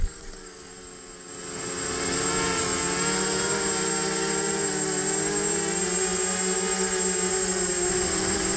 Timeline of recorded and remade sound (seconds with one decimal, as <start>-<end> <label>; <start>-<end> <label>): 0.0-0.7 remade; 0.7-8.6 recorded